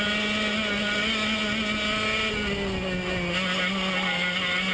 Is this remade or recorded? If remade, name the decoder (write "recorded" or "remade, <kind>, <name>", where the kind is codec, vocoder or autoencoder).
recorded